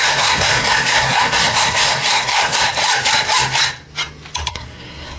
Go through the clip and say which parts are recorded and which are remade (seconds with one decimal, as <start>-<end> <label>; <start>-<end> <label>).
0.0-2.8 remade; 2.8-4.5 recorded; 4.5-5.2 remade